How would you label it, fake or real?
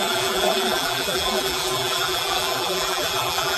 fake